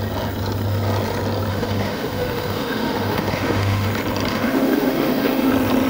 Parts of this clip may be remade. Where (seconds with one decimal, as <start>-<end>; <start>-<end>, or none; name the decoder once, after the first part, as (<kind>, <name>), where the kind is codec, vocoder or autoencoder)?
1.5-3.9 (autoencoder, DAC-VAE); 4.3-5.5